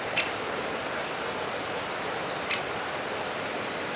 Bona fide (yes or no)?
yes